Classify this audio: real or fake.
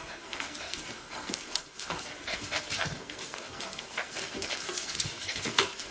fake